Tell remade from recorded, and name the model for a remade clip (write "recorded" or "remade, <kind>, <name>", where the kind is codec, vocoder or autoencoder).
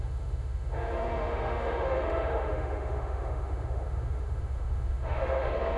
remade, autoencoder, DAC-VAE